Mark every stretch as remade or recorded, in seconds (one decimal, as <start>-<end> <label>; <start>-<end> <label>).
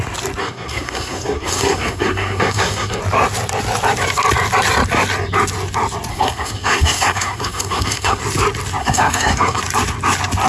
0.0-0.4 recorded; 0.4-3.0 remade; 3.0-6.1 recorded; 6.1-8.2 remade; 8.2-8.8 recorded; 8.8-9.6 remade; 9.6-10.5 recorded